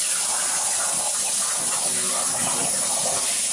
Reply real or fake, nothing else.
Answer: real